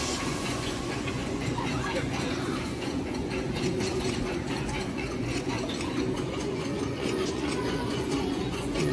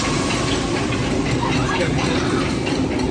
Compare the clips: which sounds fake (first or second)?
first